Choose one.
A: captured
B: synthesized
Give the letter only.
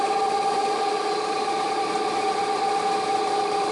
B